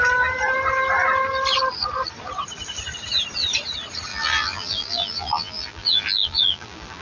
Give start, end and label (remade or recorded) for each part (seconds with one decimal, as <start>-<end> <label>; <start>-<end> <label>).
0.0-4.1 recorded; 4.1-7.0 remade